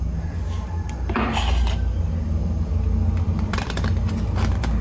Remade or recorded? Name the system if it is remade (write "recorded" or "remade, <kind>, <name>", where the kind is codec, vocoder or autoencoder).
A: recorded